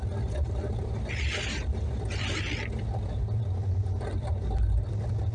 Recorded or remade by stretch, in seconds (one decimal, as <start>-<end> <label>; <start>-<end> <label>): 0.0-5.3 recorded